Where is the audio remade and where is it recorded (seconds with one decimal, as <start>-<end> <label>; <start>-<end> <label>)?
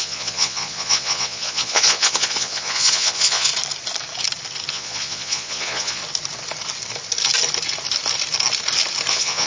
0.0-3.5 remade; 3.5-4.7 recorded; 4.7-6.0 remade; 6.0-9.1 recorded; 9.1-9.5 remade